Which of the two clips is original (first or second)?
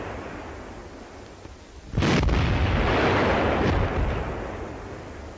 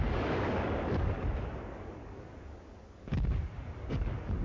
first